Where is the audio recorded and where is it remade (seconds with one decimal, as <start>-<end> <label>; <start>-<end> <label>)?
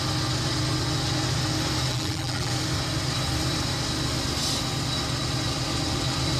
0.0-1.9 recorded; 1.9-2.5 remade; 2.5-6.4 recorded